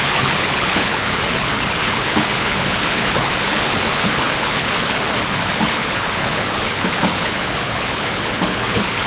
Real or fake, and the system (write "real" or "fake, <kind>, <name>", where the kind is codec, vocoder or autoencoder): fake, codec, HILCodec